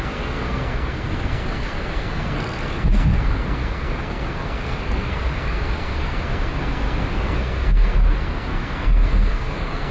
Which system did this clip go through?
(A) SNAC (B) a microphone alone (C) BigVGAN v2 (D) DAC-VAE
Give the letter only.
A